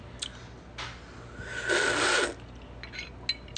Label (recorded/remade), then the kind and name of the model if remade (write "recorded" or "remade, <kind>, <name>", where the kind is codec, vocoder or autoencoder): recorded